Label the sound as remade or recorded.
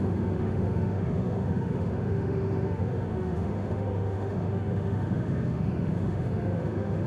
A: remade